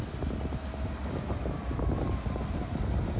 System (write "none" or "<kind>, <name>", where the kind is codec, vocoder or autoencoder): none